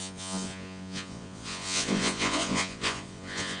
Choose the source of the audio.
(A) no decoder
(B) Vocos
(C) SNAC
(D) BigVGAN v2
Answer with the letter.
B